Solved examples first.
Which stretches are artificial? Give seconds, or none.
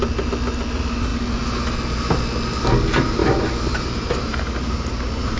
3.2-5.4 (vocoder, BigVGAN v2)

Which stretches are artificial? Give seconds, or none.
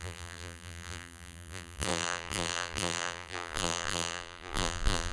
0.0-5.1 (vocoder, BigVGAN v2)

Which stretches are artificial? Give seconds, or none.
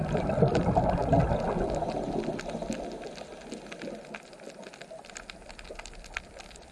none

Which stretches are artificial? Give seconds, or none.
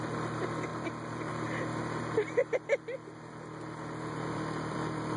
none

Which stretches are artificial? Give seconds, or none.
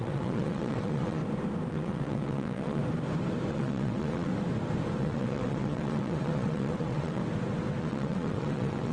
0.0-1.2 (vocoder, WaveNeXt); 1.7-2.8; 3.5-4.3; 5.0-7.2; 7.8-8.9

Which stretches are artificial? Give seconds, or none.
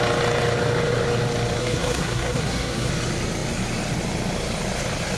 1.6-2.9 (codec, SNAC)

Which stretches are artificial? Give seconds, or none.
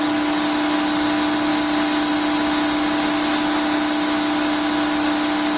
none